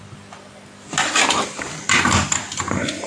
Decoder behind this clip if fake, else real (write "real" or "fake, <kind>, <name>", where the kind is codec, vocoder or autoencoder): real